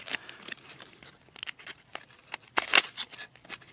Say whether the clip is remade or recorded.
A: recorded